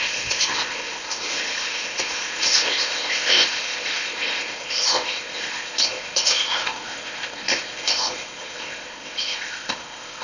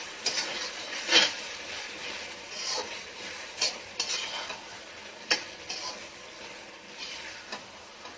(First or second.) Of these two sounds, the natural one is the second